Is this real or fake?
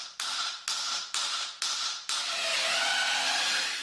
real